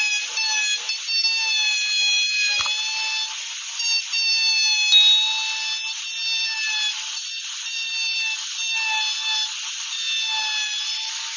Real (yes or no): yes